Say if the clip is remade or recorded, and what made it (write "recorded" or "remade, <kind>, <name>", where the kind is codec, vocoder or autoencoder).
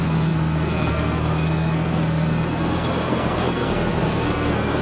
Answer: remade, codec, SNAC